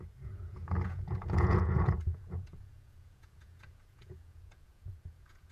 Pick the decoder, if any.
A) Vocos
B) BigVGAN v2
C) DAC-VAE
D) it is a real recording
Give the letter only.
A